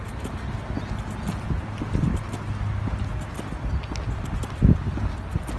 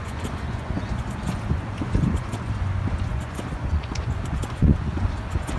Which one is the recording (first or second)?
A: first